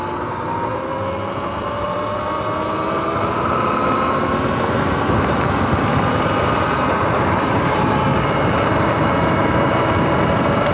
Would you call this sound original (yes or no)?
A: yes